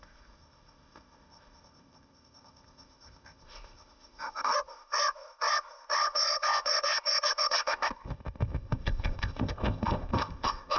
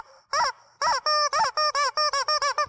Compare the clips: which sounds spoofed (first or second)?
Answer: first